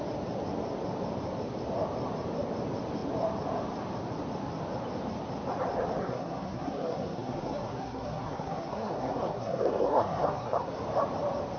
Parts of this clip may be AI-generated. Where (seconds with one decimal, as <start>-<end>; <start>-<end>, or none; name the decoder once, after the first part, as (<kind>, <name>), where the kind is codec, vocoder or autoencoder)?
6.0-10.7 (codec, SNAC)